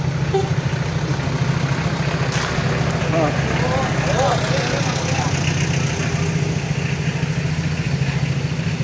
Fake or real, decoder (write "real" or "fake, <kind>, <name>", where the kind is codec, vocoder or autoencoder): real